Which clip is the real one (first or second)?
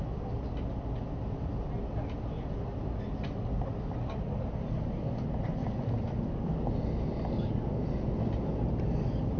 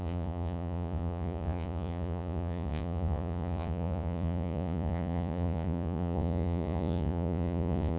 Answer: first